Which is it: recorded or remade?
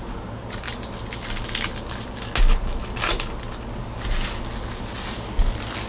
recorded